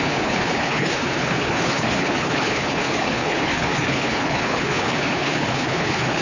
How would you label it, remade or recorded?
remade